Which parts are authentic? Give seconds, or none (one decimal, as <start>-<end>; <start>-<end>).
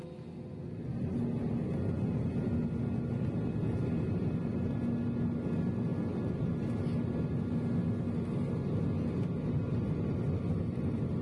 0.0-11.2